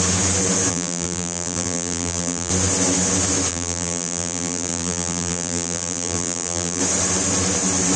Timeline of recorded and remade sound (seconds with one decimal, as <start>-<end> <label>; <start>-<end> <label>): 0.0-0.7 recorded; 0.7-2.5 remade; 2.5-3.5 recorded; 3.5-6.8 remade; 6.8-8.0 recorded